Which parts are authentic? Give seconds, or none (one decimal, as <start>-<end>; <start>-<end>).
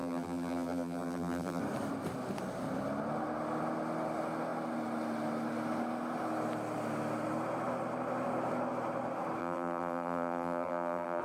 1.6-9.4